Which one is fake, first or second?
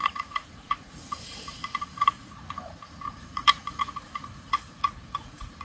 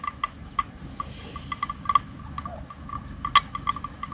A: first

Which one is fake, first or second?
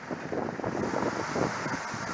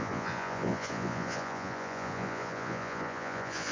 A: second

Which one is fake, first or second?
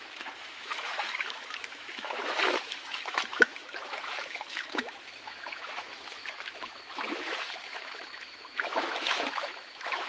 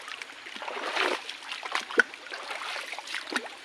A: first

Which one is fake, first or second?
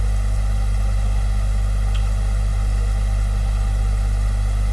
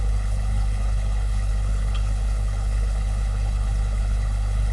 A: second